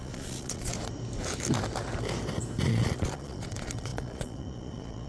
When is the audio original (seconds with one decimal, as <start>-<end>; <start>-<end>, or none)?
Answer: 0.7-2.7